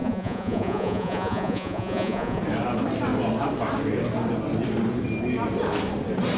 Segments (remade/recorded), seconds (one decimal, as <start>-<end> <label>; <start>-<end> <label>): 0.0-2.4 remade; 2.4-6.4 recorded

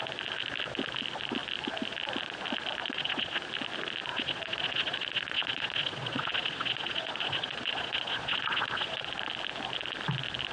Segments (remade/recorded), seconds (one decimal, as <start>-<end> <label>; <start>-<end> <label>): 0.0-2.8 recorded; 2.8-3.4 remade; 3.4-4.1 recorded; 4.1-9.1 remade; 9.1-10.5 recorded

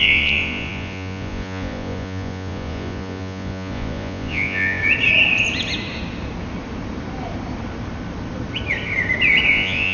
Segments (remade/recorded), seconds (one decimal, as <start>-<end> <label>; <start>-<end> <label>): 0.0-4.8 remade; 4.8-9.5 recorded; 9.5-9.9 remade

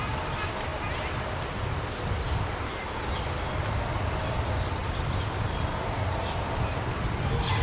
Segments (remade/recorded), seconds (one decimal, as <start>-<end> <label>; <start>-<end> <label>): 0.0-7.6 recorded

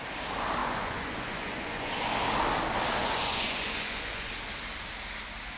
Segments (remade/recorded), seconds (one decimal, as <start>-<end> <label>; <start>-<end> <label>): 0.0-0.6 recorded; 0.6-1.9 remade; 1.9-3.0 recorded; 3.0-4.3 remade; 4.3-5.6 recorded

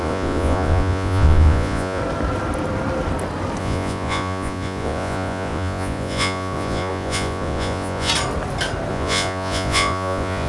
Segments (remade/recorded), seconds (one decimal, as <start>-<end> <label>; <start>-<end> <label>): 0.0-2.0 remade; 2.0-3.6 recorded; 3.6-8.1 remade; 8.1-8.9 recorded; 8.9-10.5 remade